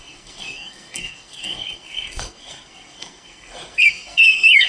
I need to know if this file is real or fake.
fake